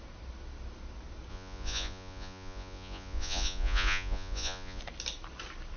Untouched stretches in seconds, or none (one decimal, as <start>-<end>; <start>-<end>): 0.0-1.3; 4.8-5.8